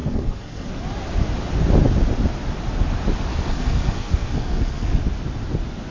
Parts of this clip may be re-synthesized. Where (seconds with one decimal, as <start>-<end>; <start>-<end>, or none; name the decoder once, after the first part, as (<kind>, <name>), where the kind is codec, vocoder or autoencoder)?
0.0-0.7 (codec, SNAC); 3.3-5.0